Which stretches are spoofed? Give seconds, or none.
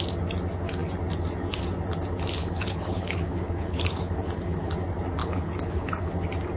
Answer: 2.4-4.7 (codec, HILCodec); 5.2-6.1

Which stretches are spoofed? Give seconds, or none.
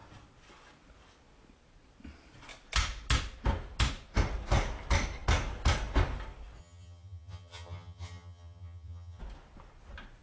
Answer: 6.6-9.2 (vocoder, HiFi-GAN)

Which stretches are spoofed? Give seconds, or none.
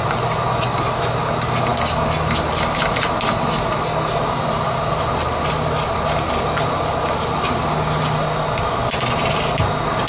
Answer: none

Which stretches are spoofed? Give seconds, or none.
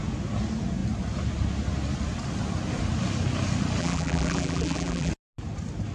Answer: 3.8-5.1 (vocoder, BigVGAN v2)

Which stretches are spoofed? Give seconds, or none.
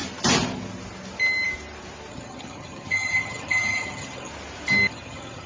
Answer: 2.1-4.3 (vocoder, HiFi-GAN); 4.9-5.5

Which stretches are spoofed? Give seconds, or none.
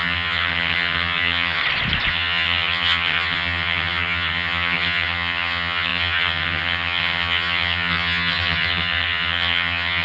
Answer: 0.0-1.6 (vocoder, HiFi-GAN); 2.1-10.0